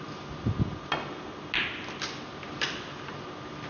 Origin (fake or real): real